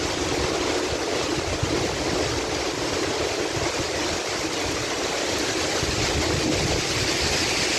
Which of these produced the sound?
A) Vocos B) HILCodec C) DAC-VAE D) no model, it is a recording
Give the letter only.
D